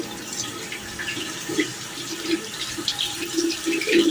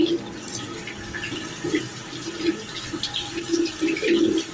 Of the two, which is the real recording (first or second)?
second